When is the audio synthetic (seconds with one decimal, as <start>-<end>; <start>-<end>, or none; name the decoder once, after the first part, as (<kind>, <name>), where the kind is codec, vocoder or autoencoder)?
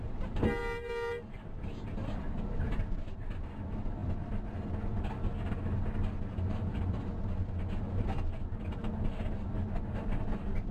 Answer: none